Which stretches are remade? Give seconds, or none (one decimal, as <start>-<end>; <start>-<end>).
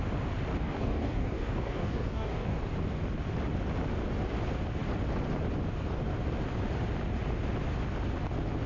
0.5-2.6